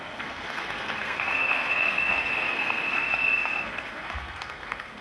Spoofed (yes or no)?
yes